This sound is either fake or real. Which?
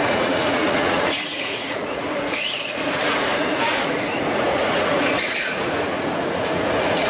fake